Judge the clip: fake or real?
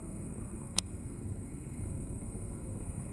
fake